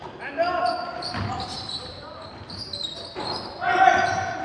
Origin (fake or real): real